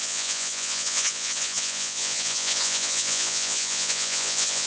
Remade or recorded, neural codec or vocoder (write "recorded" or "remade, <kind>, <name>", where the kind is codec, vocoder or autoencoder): remade, vocoder, Vocos